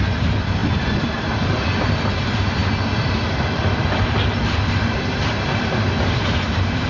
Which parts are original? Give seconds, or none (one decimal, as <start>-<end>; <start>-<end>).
0.0-6.9